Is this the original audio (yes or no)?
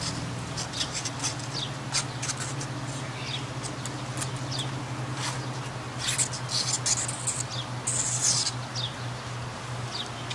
yes